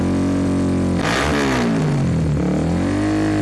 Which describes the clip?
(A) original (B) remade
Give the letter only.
A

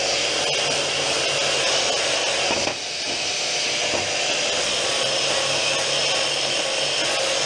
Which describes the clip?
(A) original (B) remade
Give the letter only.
A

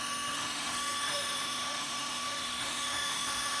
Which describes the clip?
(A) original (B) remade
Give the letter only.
B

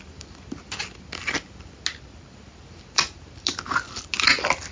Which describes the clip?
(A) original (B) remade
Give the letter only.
A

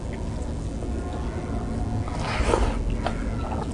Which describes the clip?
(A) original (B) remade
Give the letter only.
A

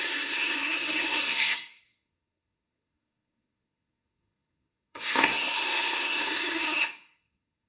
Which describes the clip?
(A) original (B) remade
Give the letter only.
B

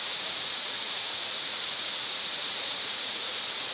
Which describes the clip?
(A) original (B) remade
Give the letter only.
B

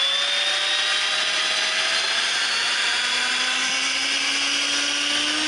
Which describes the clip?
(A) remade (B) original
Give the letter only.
B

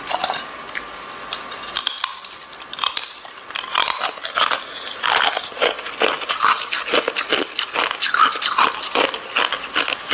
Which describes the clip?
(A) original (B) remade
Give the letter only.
A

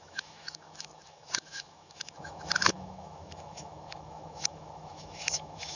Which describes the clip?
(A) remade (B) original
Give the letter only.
A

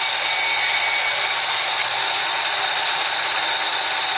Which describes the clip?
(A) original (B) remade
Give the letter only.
A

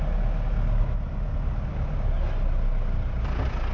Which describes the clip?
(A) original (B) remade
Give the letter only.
A